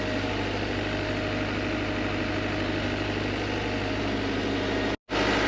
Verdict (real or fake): real